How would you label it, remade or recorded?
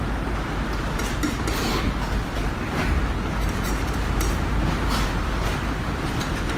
remade